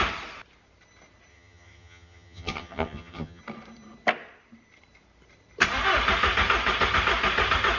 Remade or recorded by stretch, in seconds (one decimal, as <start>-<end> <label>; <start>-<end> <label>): 0.0-1.3 recorded; 1.3-3.4 remade; 3.4-7.8 recorded